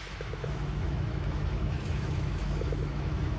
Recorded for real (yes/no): no